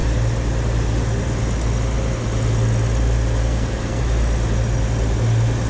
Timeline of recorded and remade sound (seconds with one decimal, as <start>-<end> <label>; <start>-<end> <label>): 0.0-3.4 recorded; 3.4-4.0 remade; 4.0-5.7 recorded

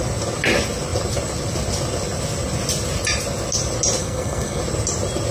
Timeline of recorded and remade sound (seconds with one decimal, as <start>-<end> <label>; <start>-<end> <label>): 0.0-4.0 recorded; 4.0-4.6 remade; 4.6-5.3 recorded

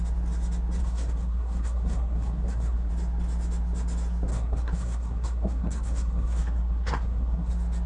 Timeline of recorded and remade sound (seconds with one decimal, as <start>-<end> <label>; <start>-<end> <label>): 0.0-0.8 recorded; 0.8-2.9 remade; 2.9-4.3 recorded; 4.3-7.5 remade; 7.5-7.9 recorded

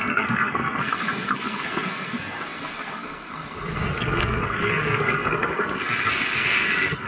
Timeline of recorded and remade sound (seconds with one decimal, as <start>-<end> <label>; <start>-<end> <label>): 0.0-7.1 remade

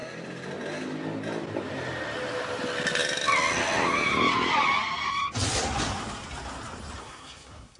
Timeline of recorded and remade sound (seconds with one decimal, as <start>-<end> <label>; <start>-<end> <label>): 0.0-7.0 recorded; 7.0-7.8 remade

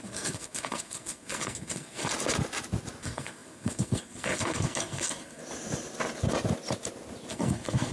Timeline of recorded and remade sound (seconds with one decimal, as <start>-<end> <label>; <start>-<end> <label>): 0.0-2.1 remade; 2.1-3.0 recorded; 3.0-5.4 remade; 5.4-7.3 recorded; 7.3-7.9 remade

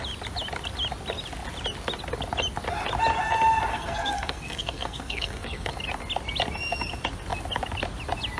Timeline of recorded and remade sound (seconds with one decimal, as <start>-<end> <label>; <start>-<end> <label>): 0.0-3.7 recorded; 3.7-5.7 remade; 5.7-8.4 recorded

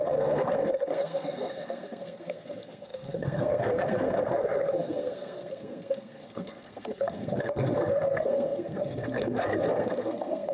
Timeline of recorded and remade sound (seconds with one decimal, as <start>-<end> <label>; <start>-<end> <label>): 0.0-10.5 remade